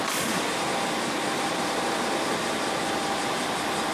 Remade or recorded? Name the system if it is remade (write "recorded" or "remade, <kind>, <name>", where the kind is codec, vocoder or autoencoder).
recorded